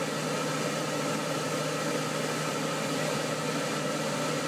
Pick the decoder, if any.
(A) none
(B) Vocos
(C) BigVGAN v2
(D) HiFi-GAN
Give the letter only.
A